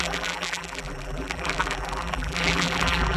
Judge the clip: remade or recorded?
remade